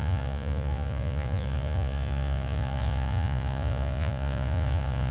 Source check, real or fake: fake